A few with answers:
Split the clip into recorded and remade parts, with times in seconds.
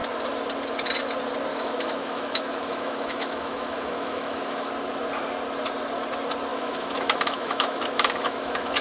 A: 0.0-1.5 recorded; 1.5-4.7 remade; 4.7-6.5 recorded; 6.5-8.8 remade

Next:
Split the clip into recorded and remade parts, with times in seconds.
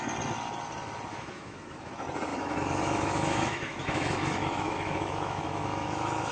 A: 0.0-1.1 recorded; 1.1-1.9 remade; 1.9-2.3 recorded; 2.3-6.3 remade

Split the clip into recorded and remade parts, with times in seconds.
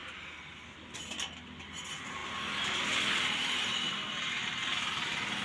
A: 0.0-5.4 recorded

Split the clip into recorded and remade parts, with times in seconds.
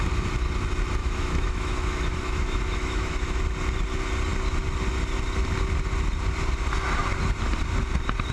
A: 0.0-1.0 recorded; 1.0-3.4 remade; 3.4-8.3 recorded